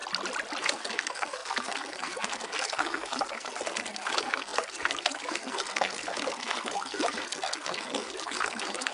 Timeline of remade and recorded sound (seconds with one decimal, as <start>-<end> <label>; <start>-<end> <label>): 0.0-0.6 recorded; 0.6-8.9 remade